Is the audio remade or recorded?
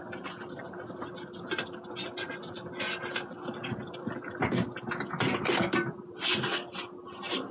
recorded